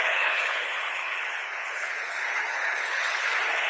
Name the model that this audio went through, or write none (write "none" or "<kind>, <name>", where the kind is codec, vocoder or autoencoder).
codec, HILCodec